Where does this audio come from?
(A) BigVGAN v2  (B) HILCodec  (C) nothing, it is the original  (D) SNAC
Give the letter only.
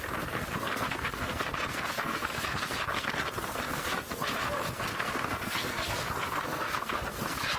D